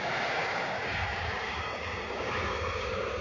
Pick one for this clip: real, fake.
fake